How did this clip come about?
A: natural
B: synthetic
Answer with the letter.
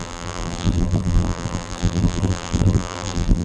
B